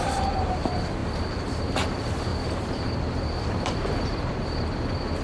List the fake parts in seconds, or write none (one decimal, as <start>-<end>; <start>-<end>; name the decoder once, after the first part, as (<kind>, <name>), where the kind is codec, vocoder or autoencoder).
1.0-1.6 (vocoder, BigVGAN v2); 2.3-4.3